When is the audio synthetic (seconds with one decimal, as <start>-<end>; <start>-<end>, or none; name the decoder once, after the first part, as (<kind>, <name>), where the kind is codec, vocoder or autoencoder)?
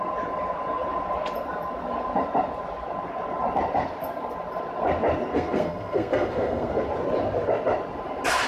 5.3-6.8 (codec, SNAC)